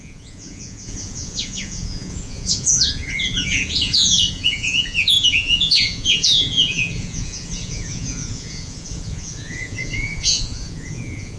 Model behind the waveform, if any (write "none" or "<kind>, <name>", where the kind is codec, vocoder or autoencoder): vocoder, Vocos